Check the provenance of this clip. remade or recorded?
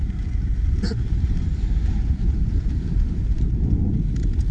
recorded